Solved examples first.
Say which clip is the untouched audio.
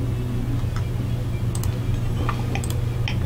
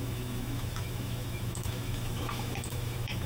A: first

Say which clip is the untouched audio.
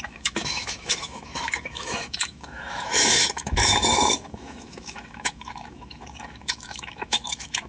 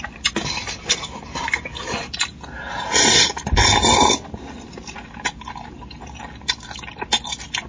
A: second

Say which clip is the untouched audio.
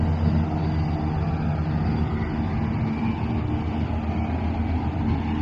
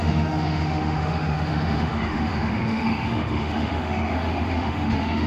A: first